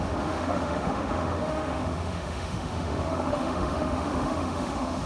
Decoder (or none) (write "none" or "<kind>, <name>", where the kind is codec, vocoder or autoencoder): autoencoder, DAC-VAE